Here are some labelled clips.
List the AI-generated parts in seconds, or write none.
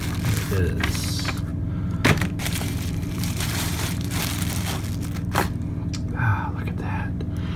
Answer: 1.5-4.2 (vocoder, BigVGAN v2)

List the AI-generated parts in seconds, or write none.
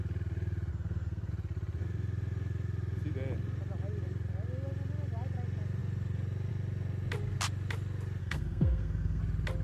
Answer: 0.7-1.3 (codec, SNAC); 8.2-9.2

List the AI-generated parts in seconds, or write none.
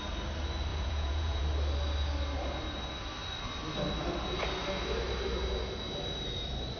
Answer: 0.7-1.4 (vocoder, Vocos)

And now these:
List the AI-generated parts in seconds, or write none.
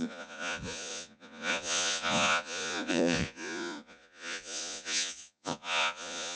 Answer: 0.0-6.4 (vocoder, Vocos)